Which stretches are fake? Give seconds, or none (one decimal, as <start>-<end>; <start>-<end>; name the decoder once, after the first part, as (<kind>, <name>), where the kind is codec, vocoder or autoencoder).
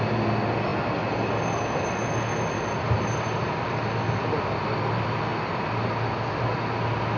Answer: none